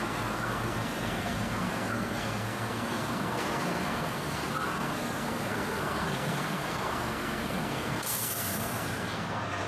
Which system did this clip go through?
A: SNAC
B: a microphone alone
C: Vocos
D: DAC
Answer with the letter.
A